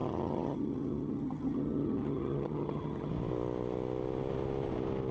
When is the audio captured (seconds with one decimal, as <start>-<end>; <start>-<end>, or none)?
3.1-5.1